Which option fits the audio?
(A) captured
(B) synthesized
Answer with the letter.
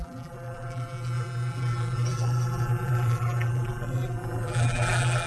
B